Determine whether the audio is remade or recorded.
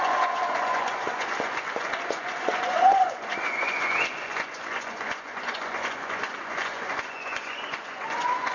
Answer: remade